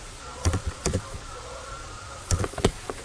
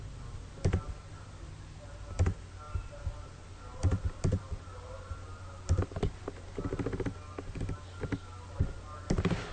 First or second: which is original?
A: second